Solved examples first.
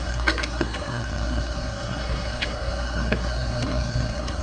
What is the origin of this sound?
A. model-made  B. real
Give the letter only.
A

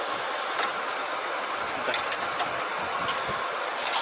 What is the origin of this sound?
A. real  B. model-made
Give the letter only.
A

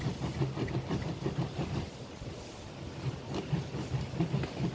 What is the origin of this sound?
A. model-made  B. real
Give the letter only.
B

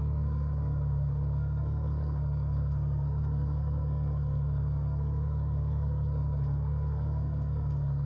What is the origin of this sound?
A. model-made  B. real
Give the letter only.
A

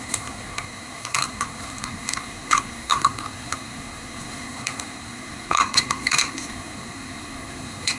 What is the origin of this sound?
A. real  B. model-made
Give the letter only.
B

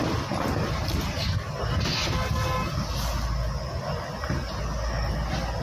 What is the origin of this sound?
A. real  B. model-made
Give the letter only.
A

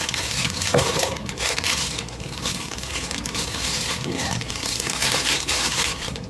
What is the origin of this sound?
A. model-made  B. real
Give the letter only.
A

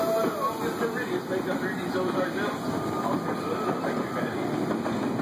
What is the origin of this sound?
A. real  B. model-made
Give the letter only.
A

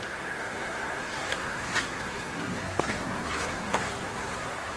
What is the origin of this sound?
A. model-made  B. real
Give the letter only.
A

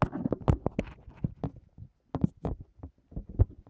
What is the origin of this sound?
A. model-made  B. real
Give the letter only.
B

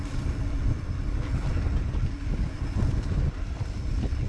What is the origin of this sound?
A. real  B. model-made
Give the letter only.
A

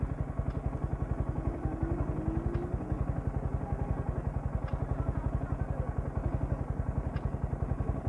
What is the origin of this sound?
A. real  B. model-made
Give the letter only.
A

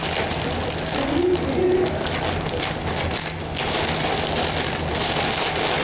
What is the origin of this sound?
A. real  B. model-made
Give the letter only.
A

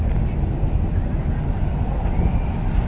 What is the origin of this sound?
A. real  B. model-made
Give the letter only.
A